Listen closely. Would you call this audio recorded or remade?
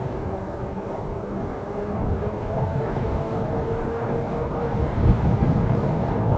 remade